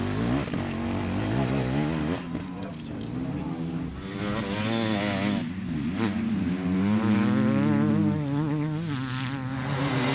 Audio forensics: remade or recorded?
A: recorded